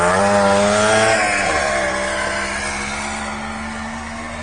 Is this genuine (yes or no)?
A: yes